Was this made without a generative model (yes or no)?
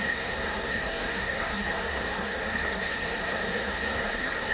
no